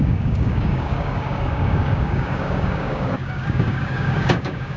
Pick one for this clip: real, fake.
fake